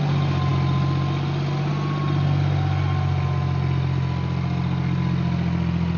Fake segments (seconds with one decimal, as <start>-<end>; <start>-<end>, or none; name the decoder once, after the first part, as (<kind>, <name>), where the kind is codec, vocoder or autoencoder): none